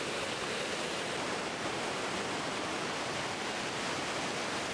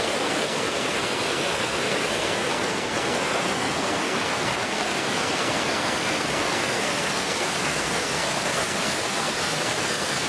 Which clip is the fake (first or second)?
second